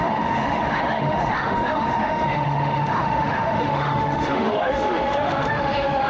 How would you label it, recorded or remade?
remade